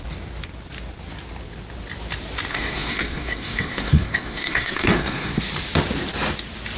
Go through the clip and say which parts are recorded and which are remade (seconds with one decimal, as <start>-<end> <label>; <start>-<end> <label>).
0.0-2.5 recorded; 2.5-5.4 remade; 5.4-6.8 recorded